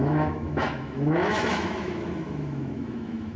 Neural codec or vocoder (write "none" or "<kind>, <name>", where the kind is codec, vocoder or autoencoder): autoencoder, DAC-VAE